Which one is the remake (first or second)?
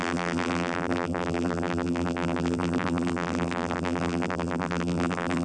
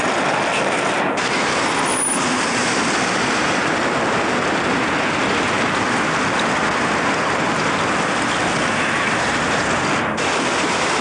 first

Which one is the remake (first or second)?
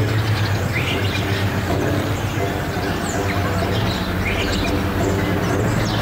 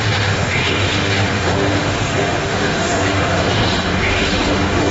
second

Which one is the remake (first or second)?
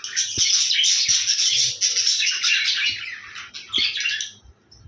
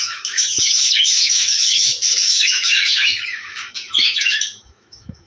second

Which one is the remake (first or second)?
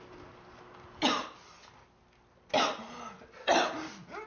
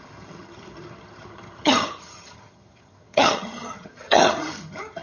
second